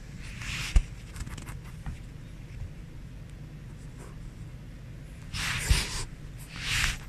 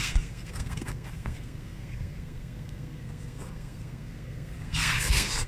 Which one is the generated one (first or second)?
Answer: second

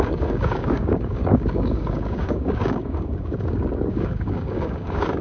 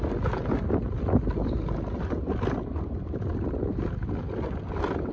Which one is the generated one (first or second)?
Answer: first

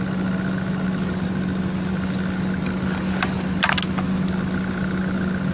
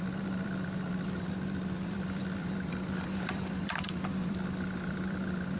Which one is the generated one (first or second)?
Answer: second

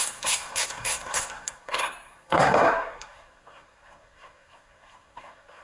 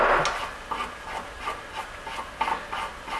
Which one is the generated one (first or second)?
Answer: first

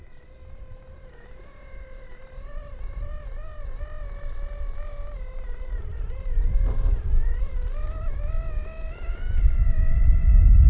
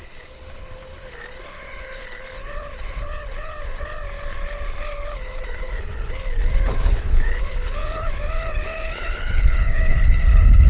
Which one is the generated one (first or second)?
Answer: second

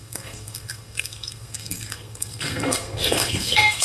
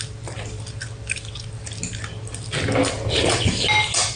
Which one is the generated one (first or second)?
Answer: first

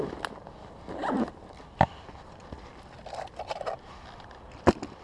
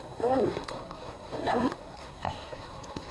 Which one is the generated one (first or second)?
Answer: second